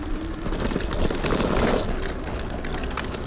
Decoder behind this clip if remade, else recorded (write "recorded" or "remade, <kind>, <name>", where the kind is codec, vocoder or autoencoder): recorded